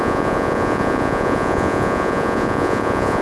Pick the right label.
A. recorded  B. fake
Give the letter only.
B